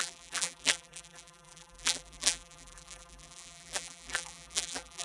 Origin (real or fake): fake